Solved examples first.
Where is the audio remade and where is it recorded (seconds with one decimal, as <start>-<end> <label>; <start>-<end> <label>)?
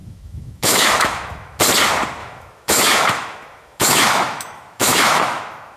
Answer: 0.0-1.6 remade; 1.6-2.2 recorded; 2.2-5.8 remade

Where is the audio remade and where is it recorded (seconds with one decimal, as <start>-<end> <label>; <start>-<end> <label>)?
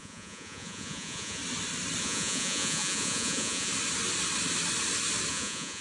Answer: 0.0-1.4 remade; 1.4-2.0 recorded; 2.0-3.7 remade; 3.7-5.3 recorded; 5.3-5.8 remade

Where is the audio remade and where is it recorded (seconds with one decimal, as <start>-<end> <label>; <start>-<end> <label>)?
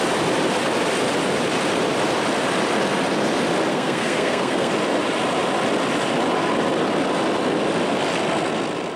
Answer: 0.0-3.7 recorded; 3.7-4.7 remade; 4.7-9.0 recorded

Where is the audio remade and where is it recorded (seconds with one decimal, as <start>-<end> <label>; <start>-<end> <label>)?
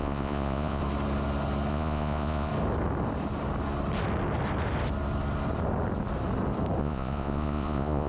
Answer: 0.0-0.8 remade; 0.8-1.7 recorded; 1.7-2.5 remade; 2.5-6.8 recorded; 6.8-8.1 remade